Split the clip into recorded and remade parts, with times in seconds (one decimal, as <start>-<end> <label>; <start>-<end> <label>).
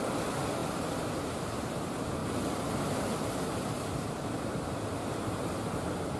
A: 0.0-6.2 recorded